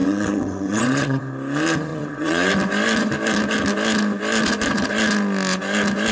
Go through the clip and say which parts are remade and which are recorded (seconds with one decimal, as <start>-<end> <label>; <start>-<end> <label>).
0.0-1.2 remade; 1.2-1.9 recorded; 1.9-2.5 remade; 2.5-6.1 recorded